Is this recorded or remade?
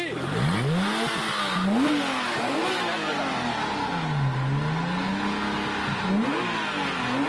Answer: recorded